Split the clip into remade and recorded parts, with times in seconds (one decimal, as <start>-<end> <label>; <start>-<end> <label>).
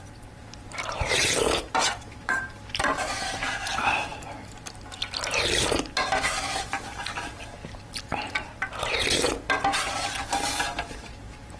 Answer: 0.0-11.6 remade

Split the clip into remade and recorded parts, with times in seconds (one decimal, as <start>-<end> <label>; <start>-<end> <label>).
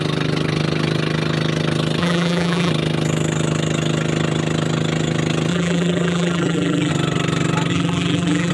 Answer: 0.0-2.0 recorded; 2.0-2.7 remade; 2.7-5.5 recorded; 5.5-6.9 remade; 6.9-7.7 recorded; 7.7-8.5 remade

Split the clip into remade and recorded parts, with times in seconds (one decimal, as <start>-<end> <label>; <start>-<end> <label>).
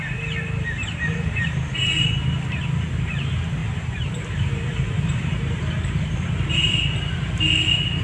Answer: 0.0-0.8 recorded; 0.8-1.9 remade; 1.9-3.6 recorded; 3.6-6.7 remade; 6.7-8.0 recorded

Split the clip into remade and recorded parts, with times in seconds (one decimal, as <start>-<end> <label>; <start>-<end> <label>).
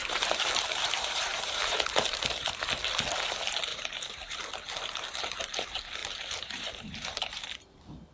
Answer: 0.0-2.6 remade; 2.6-3.7 recorded; 3.7-4.4 remade; 4.4-6.0 recorded; 6.0-8.1 remade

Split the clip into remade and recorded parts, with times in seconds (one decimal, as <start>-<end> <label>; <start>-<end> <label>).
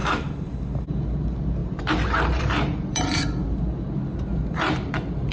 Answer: 0.0-0.6 remade; 0.6-1.6 recorded; 1.6-3.6 remade; 3.6-4.3 recorded; 4.3-5.3 remade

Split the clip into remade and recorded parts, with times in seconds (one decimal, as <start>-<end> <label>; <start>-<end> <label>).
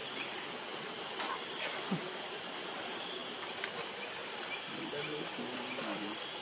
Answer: 0.0-6.4 recorded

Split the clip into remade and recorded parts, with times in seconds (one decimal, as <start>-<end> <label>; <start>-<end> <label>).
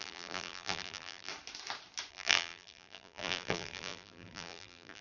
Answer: 0.0-1.3 remade; 1.3-2.1 recorded; 2.1-5.0 remade